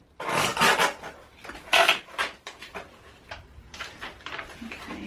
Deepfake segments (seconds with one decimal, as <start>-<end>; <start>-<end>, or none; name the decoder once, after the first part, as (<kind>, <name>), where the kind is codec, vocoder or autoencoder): 2.2-4.4 (vocoder, BigVGAN v2)